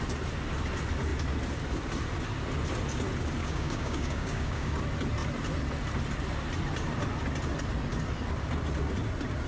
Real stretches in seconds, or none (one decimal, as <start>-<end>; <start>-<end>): 0.0-3.4; 4.8-9.5